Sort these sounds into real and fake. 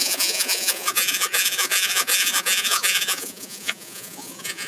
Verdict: fake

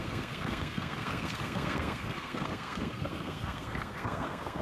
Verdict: fake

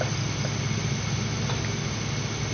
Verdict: real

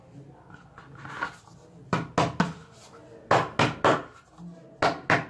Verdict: real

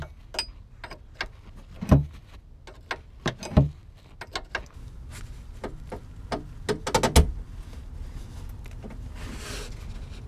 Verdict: real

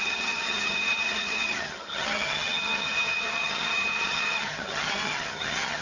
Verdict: fake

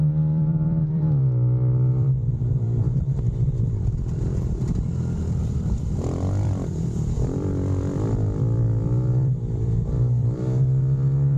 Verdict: fake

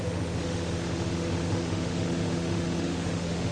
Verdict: fake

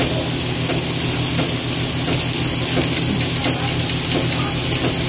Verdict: real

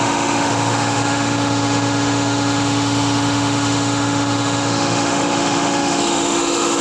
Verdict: fake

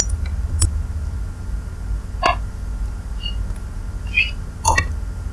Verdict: real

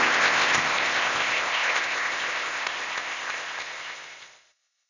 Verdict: fake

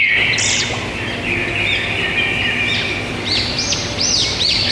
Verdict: real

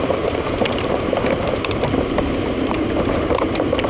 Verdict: fake